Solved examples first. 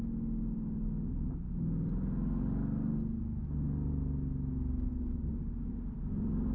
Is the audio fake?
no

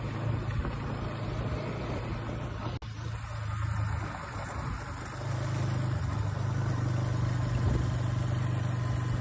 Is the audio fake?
no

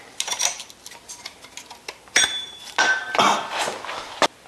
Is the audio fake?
no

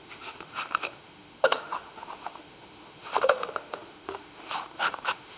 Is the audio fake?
yes